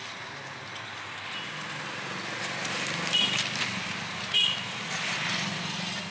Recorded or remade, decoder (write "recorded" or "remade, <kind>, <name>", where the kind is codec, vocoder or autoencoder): recorded